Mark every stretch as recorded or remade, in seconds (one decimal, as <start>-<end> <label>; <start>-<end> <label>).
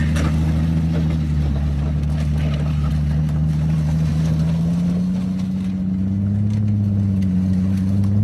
0.0-8.2 recorded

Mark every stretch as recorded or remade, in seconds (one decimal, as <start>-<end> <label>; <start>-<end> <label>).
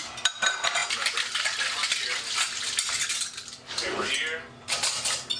0.0-5.4 recorded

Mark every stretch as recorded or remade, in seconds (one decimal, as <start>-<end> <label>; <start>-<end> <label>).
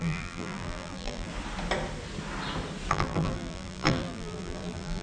0.0-1.3 remade; 1.3-2.9 recorded; 2.9-5.0 remade